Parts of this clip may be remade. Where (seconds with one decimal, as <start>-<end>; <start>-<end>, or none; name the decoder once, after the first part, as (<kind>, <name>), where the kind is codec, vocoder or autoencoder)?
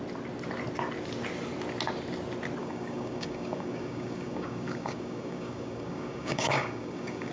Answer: 2.6-7.3 (codec, DAC)